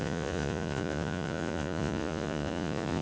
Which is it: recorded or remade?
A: remade